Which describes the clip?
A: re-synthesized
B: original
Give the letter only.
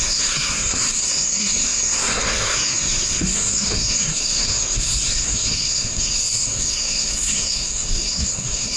A